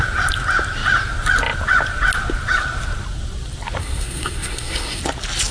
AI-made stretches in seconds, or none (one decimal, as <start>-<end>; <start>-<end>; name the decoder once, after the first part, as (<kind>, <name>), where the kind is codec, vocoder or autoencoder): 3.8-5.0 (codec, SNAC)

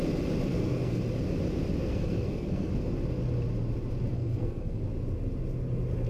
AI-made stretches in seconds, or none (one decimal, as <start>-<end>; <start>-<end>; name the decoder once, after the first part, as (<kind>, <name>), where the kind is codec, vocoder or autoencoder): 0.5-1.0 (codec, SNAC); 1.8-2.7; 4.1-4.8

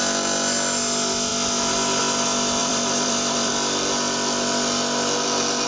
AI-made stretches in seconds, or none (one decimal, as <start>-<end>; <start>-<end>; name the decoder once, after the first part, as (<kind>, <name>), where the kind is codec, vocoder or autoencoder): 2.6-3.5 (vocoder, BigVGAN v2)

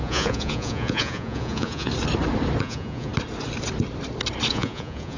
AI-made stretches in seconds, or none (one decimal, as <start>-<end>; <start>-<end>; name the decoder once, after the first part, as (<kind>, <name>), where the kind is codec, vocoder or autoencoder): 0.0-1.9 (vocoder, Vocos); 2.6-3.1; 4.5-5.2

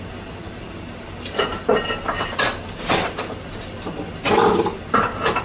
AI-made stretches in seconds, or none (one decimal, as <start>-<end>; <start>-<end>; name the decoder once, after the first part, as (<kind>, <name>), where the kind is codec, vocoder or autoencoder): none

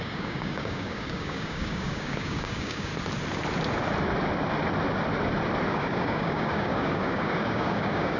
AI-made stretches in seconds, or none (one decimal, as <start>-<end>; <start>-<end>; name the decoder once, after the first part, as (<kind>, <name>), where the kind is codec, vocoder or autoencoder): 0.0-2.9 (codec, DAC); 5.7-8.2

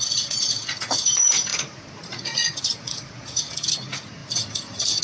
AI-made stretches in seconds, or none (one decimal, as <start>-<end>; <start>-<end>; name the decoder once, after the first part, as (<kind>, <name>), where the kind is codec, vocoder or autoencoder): 0.0-5.0 (vocoder, Vocos)

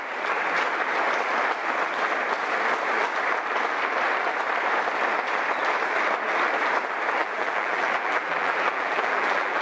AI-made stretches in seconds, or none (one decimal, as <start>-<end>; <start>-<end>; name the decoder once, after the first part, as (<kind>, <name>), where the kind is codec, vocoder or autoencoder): 7.2-9.6 (vocoder, BigVGAN v2)